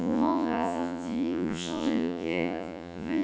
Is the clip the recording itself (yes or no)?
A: no